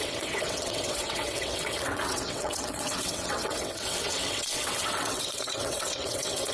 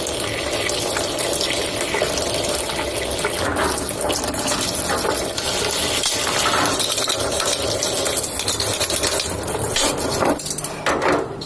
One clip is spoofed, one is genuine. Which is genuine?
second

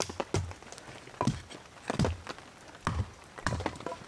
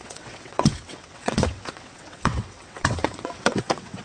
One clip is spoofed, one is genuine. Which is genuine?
first